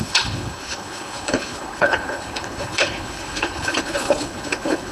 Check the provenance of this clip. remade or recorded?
remade